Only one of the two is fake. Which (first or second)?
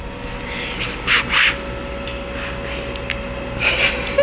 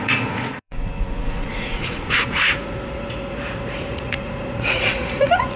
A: second